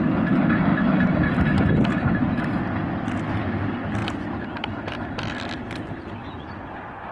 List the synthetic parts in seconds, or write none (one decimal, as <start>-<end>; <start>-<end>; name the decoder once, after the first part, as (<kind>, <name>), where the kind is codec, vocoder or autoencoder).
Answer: 6.2-7.1 (vocoder, Vocos)